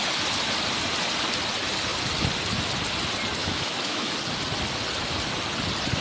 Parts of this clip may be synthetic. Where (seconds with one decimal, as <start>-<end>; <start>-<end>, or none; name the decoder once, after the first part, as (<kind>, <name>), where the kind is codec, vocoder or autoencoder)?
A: 3.4-4.1 (autoencoder, DAC-VAE)